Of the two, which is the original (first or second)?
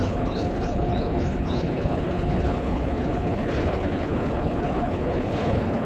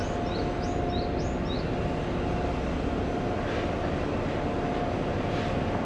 second